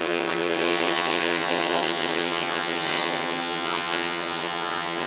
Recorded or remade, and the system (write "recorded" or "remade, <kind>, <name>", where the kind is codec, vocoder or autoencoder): remade, vocoder, HiFi-GAN